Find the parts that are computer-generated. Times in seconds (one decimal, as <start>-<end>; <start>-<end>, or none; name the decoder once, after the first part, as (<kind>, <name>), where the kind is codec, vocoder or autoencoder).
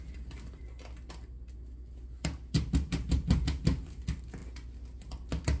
none